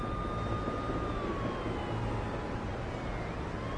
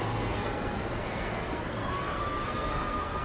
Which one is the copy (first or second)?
second